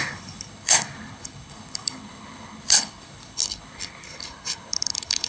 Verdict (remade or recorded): remade